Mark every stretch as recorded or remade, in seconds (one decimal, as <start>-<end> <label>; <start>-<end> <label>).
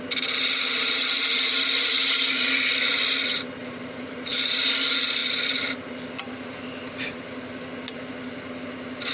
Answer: 0.0-3.6 recorded; 3.6-4.7 remade; 4.7-9.1 recorded